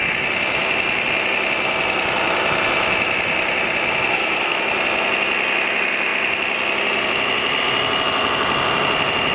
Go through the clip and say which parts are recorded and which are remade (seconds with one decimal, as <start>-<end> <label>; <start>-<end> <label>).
0.0-4.1 recorded; 4.1-4.6 remade; 4.6-9.3 recorded